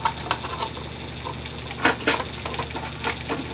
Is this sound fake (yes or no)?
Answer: no